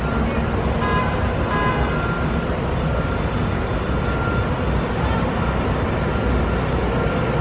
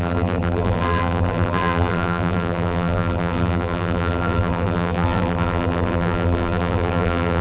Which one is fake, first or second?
second